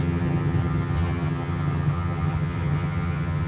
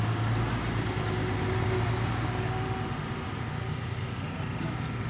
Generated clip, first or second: first